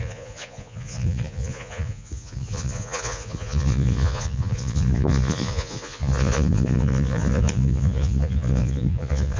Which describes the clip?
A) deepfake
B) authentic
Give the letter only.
A